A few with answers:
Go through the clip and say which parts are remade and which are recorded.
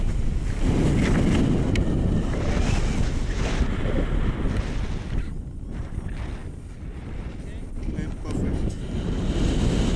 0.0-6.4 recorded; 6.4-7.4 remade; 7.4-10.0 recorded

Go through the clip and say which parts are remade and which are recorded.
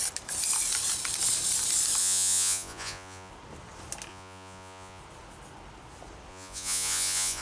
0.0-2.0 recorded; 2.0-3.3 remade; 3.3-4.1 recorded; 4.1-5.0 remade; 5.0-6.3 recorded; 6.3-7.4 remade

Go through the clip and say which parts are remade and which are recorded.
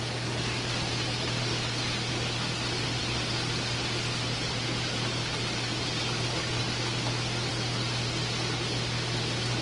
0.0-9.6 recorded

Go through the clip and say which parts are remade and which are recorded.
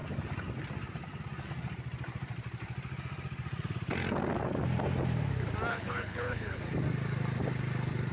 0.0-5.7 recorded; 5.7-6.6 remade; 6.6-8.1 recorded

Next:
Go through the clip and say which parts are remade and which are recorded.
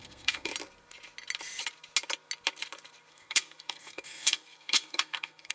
0.0-0.5 remade; 0.5-3.1 recorded; 3.1-5.5 remade